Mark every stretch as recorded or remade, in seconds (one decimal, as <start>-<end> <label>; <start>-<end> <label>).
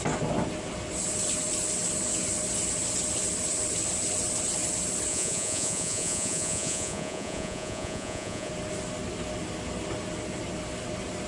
0.0-5.1 recorded; 5.1-8.5 remade; 8.5-11.3 recorded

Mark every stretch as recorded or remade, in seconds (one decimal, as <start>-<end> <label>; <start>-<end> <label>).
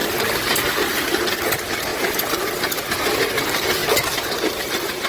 0.0-5.1 recorded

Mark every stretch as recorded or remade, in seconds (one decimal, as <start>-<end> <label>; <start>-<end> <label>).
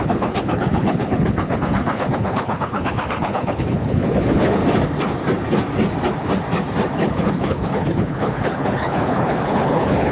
0.0-4.6 remade; 4.6-7.0 recorded; 7.0-10.1 remade